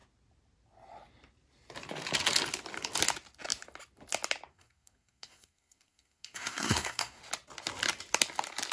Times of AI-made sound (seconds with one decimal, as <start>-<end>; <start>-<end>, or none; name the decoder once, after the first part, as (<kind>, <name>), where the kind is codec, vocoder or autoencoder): 4.5-7.2 (codec, SNAC)